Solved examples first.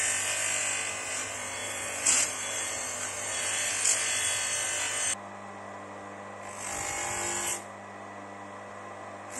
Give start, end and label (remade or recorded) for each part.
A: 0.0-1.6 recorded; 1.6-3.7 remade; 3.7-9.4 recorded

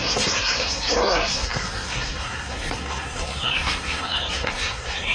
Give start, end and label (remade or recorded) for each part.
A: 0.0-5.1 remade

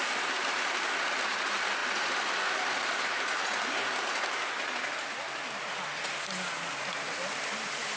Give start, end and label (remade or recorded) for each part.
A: 0.0-8.0 recorded

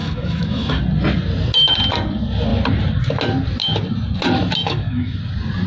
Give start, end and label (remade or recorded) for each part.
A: 0.0-0.8 remade; 0.8-4.6 recorded; 4.6-5.2 remade; 5.2-5.7 recorded

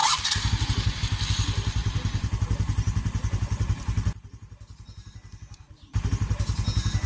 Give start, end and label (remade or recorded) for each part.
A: 0.0-1.0 remade; 1.0-1.8 recorded; 1.8-6.1 remade; 6.1-7.1 recorded

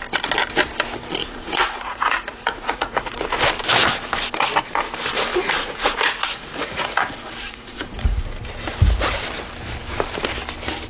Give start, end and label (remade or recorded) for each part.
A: 0.0-1.2 recorded; 1.2-3.4 remade; 3.4-5.3 recorded; 5.3-8.2 remade; 8.2-10.9 recorded

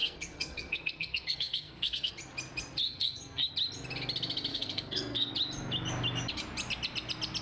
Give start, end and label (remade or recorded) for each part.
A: 0.0-2.1 remade; 2.1-2.8 recorded; 2.8-3.5 remade; 3.5-4.5 recorded; 4.5-5.3 remade; 5.3-7.4 recorded

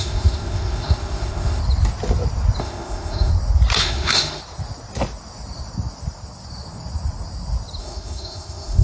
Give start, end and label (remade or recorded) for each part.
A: 0.0-1.6 remade; 1.6-2.6 recorded; 2.6-3.3 remade; 3.3-3.8 recorded; 3.8-4.4 remade; 4.4-7.8 recorded; 7.8-8.8 remade